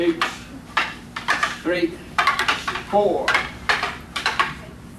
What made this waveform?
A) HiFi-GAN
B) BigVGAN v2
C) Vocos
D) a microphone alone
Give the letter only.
B